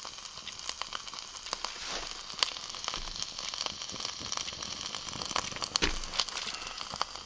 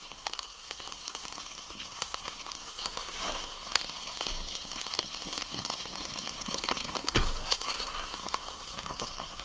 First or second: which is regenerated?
second